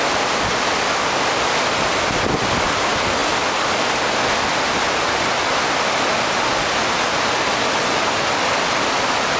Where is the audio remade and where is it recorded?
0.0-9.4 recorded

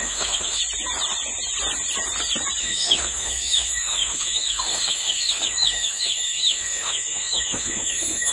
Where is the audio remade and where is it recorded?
0.0-0.6 remade; 0.6-2.6 recorded; 2.6-8.3 remade

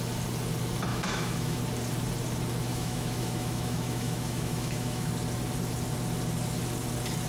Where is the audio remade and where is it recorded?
0.0-0.9 recorded; 0.9-1.6 remade; 1.6-2.7 recorded; 2.7-5.1 remade; 5.1-7.3 recorded

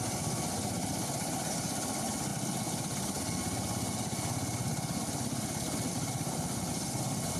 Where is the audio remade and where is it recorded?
0.0-7.4 recorded

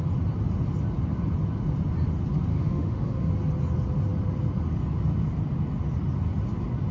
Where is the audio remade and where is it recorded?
0.0-2.5 recorded; 2.5-3.3 remade; 3.3-6.9 recorded